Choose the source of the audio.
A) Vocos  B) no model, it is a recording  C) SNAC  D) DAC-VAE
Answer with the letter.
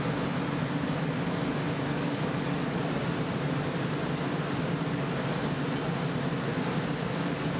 B